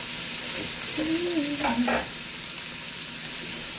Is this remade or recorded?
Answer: recorded